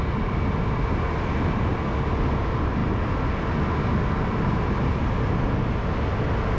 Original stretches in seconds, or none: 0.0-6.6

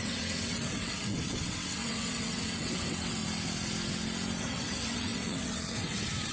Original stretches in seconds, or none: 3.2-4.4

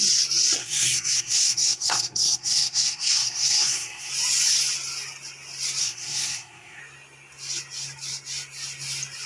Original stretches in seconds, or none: 0.0-0.6; 4.1-5.8; 6.8-9.3